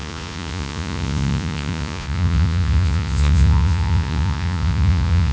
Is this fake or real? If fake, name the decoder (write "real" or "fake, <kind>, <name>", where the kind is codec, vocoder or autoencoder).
fake, vocoder, Vocos